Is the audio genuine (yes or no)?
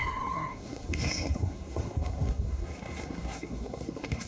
no